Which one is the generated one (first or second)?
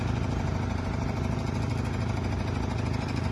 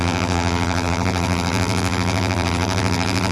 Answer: second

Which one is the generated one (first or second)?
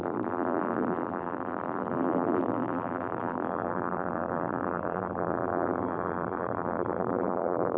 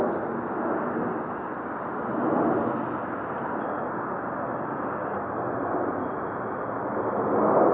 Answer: first